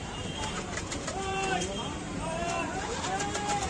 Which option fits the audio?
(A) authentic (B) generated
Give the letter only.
B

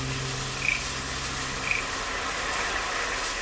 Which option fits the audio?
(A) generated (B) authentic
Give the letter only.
B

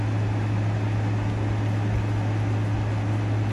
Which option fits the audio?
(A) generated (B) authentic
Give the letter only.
B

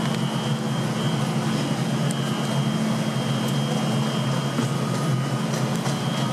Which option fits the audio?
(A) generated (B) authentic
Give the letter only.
B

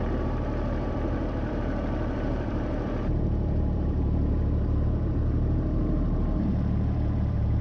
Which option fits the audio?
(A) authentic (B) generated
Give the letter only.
B